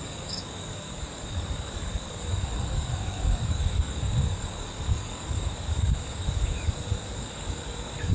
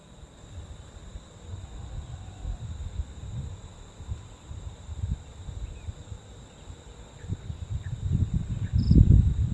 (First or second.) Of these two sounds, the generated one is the first